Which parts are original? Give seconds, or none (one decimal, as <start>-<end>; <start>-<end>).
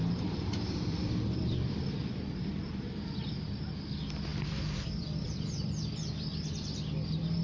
3.2-4.3; 6.3-7.4